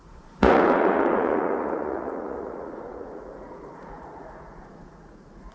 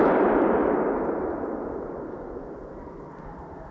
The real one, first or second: second